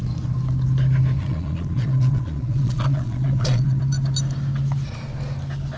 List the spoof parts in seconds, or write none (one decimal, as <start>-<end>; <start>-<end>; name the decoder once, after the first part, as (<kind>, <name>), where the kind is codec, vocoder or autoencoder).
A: 1.2-3.8 (vocoder, Vocos)